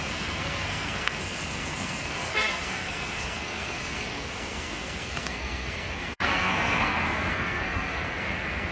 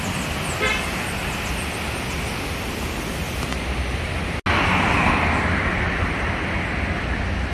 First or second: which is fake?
first